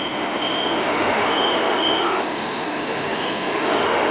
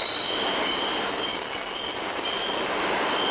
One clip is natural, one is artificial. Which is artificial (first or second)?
first